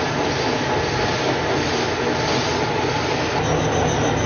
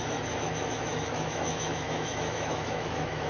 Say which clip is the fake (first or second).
second